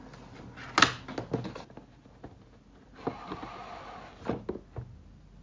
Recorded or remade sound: recorded